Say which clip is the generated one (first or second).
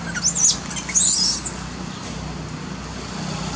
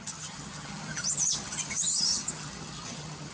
second